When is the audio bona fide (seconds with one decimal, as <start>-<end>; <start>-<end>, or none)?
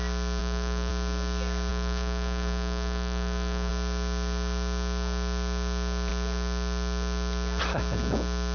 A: 0.0-0.4; 0.9-1.7; 3.7-8.5